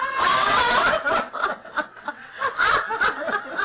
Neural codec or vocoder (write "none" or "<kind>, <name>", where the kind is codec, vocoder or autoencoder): vocoder, WaveNeXt